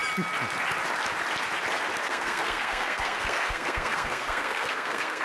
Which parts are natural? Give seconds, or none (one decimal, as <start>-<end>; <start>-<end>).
0.0-2.0